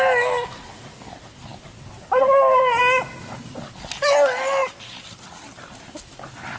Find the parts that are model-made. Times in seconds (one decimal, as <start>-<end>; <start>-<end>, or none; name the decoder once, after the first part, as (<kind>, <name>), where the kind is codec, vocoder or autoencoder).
none